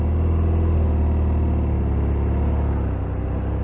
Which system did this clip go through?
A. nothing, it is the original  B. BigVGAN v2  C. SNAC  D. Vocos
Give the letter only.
A